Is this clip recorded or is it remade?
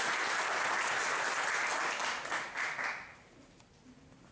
recorded